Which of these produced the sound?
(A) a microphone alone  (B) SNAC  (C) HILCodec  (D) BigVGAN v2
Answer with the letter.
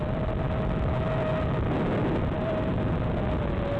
A